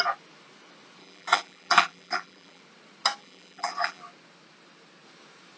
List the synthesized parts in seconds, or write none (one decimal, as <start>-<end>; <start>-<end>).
1.0-2.6; 3.2-4.0